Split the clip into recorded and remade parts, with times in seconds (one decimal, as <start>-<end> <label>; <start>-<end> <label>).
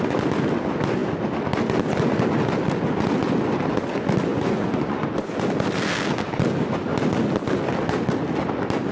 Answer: 0.0-4.3 recorded; 4.3-5.4 remade; 5.4-8.9 recorded